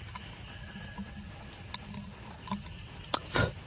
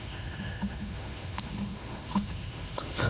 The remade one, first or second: second